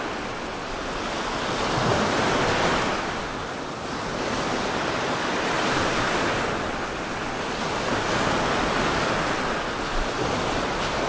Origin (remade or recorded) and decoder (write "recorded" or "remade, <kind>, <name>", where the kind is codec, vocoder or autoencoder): recorded